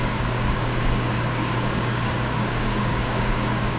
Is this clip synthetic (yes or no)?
yes